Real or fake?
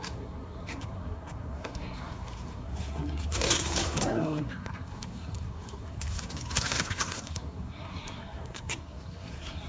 fake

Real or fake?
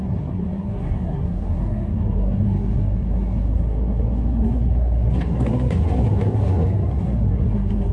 fake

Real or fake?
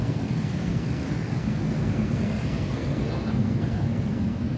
fake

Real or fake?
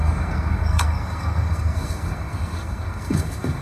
fake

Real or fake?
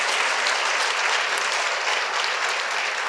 real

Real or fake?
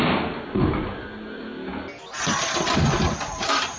real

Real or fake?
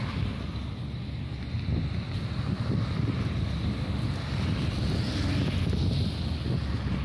real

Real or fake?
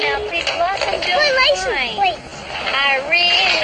real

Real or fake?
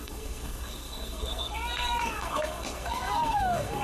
fake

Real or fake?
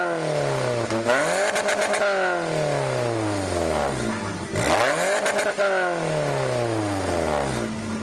real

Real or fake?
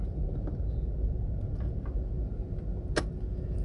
real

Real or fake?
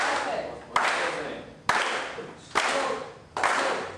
real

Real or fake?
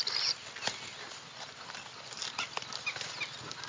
real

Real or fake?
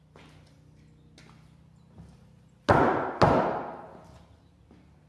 real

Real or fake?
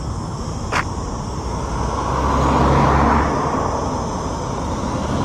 real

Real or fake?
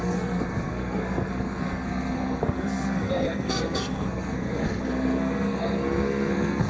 fake